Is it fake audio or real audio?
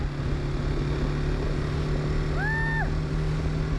real